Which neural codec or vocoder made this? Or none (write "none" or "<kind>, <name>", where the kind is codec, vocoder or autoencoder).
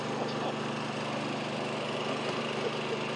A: none